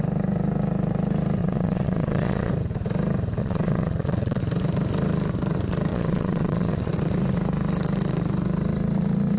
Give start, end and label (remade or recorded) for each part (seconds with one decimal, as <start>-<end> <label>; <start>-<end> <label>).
0.0-1.4 recorded; 1.4-2.5 remade; 2.5-3.4 recorded; 3.4-4.4 remade; 4.4-5.9 recorded; 5.9-6.9 remade; 6.9-9.4 recorded